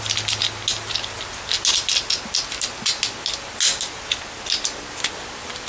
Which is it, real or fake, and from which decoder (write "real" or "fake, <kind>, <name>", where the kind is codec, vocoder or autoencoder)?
real